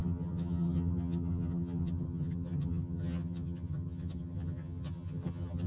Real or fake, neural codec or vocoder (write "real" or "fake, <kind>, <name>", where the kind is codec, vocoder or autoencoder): fake, vocoder, HiFi-GAN